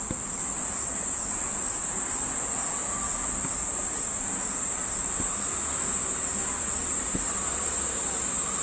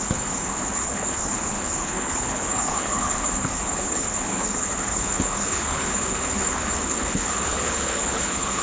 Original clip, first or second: first